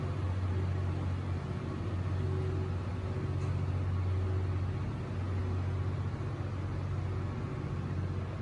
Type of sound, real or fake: real